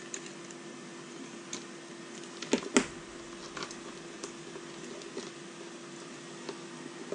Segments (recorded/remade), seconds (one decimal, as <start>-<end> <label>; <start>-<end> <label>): 0.0-7.1 recorded